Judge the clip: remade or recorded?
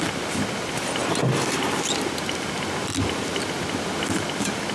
recorded